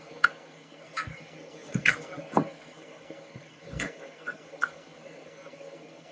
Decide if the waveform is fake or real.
fake